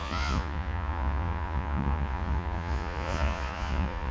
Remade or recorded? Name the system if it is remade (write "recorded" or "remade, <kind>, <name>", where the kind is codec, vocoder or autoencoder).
remade, vocoder, Vocos